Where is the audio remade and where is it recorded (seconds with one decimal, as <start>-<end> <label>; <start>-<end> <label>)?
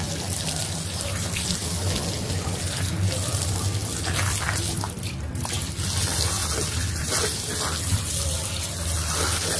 0.0-9.6 recorded